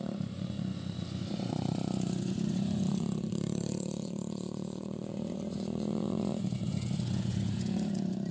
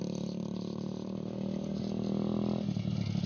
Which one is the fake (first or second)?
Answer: first